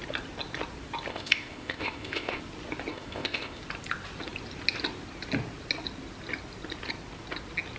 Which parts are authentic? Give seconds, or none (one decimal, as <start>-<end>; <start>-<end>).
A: 0.0-1.1; 2.4-2.9; 3.6-7.8